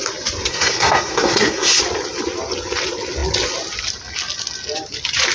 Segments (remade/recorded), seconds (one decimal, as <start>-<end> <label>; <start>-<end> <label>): 0.0-0.5 recorded; 0.5-1.8 remade; 1.8-5.3 recorded